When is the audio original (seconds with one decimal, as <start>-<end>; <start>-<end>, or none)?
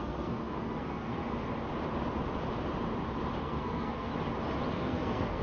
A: 1.2-3.4; 4.1-4.7